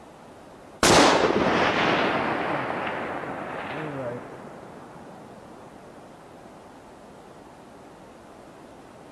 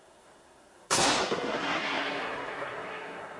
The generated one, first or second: second